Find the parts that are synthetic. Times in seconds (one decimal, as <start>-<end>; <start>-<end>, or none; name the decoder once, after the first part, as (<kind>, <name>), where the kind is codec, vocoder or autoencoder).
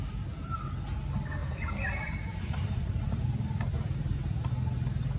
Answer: 1.4-4.5 (vocoder, BigVGAN v2)